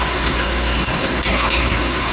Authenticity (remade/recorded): remade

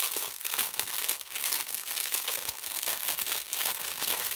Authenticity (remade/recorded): remade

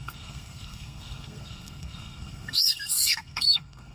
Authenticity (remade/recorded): remade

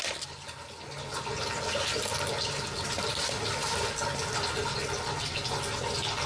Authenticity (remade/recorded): recorded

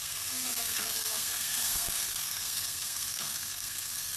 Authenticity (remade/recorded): remade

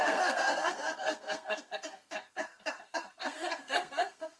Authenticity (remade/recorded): remade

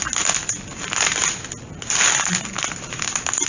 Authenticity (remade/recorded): recorded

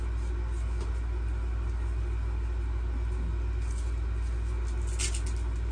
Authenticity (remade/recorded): recorded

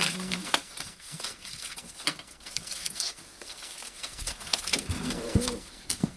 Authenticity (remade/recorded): remade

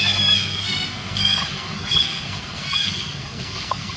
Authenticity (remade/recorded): remade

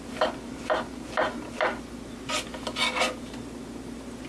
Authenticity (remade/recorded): recorded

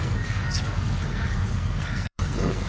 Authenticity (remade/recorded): remade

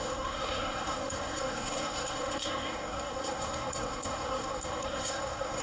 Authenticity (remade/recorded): remade